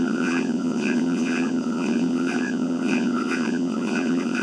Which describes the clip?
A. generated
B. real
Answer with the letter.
A